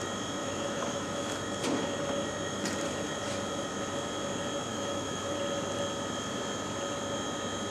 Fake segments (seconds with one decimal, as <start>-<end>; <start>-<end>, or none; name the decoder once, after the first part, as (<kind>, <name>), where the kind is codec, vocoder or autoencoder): 0.4-1.4 (autoencoder, DAC-VAE); 4.7-5.3